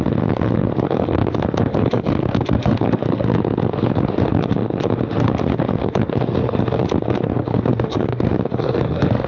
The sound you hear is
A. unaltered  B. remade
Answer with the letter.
B